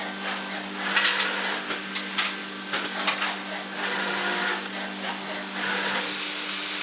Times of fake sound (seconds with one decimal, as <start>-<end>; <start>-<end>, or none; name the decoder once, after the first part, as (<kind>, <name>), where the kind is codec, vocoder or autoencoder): none